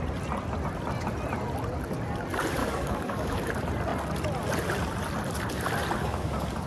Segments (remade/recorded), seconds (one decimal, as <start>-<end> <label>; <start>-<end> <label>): 0.0-2.6 recorded; 2.6-3.5 remade; 3.5-6.0 recorded; 6.0-6.7 remade

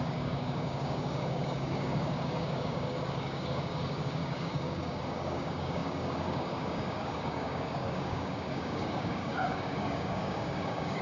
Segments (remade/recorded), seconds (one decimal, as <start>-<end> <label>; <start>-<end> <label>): 0.0-11.0 remade